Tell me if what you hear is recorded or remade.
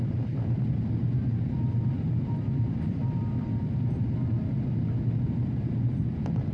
remade